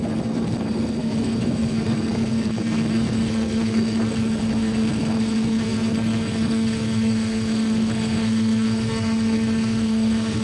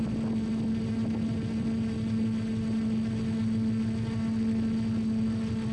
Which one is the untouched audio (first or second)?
second